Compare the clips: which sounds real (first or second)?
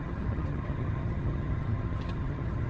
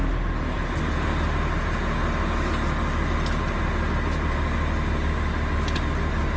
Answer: second